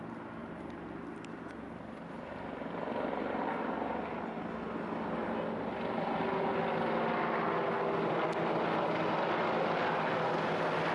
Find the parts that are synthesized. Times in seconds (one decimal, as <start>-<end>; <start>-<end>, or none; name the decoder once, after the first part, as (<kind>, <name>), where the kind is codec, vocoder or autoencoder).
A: 0.4-4.2 (vocoder, BigVGAN v2)